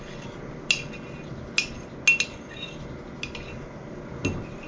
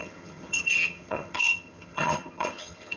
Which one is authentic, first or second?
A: first